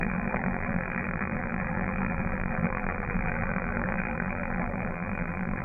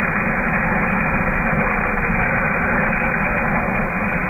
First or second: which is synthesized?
first